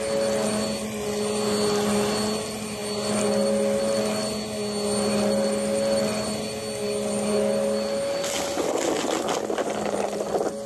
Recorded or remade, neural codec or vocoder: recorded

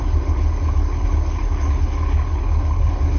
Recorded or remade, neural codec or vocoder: remade, codec, HILCodec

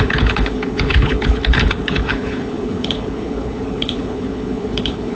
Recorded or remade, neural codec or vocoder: remade, codec, HILCodec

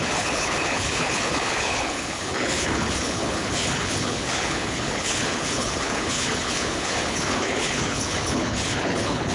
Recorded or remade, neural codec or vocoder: remade, codec, HILCodec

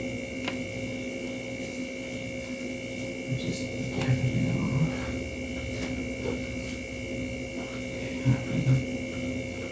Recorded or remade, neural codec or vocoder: recorded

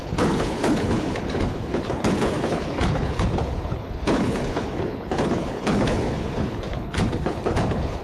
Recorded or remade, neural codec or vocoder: remade, codec, HILCodec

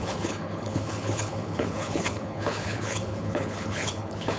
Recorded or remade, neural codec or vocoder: remade, codec, HILCodec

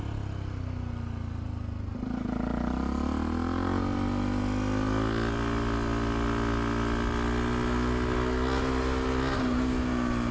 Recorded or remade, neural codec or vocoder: recorded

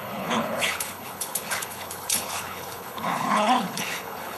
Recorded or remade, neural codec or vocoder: remade, codec, HILCodec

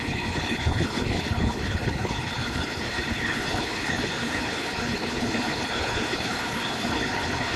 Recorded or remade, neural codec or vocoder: remade, codec, HILCodec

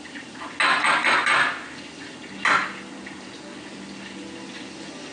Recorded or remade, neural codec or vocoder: recorded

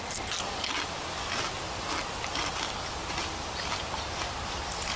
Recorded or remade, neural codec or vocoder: recorded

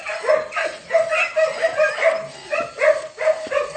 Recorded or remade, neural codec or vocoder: recorded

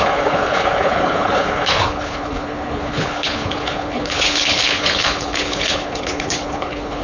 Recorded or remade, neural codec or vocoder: remade, codec, HILCodec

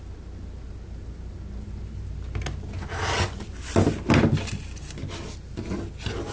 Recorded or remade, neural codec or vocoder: recorded